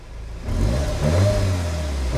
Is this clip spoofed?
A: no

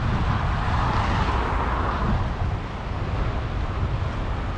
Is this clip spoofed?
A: no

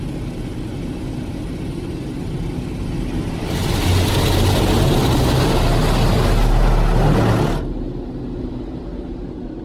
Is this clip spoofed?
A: no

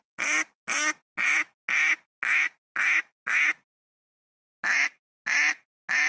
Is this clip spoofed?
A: no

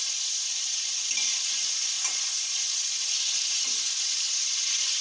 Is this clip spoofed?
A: no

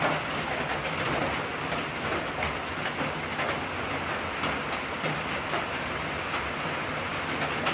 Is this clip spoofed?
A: no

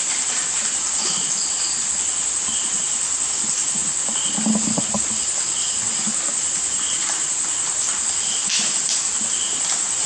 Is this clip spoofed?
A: no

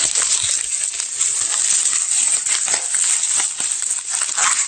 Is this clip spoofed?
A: no